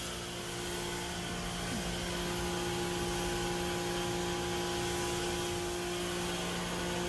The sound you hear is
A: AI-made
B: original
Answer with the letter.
B